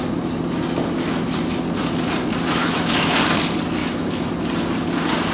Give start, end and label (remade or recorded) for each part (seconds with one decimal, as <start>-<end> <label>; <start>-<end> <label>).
0.0-2.6 recorded; 2.6-3.2 remade; 3.2-3.8 recorded; 3.8-4.3 remade; 4.3-5.3 recorded